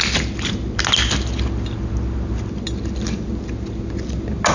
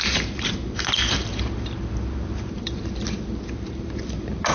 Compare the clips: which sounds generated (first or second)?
second